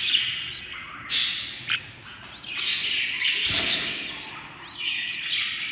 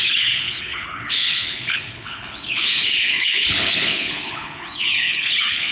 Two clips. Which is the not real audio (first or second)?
second